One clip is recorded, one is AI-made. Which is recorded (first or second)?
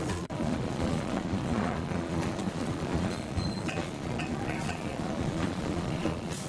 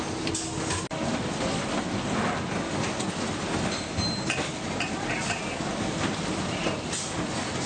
second